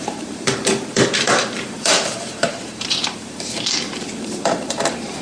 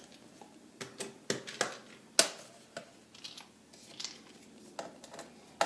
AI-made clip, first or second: first